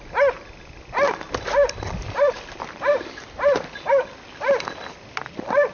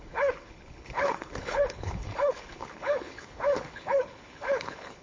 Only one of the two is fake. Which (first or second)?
second